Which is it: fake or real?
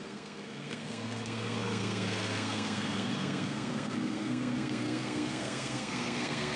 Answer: fake